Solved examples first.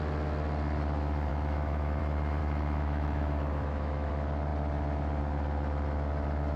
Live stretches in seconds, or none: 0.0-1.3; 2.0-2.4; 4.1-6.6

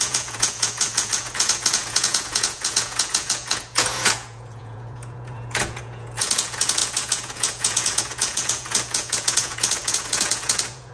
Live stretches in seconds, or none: none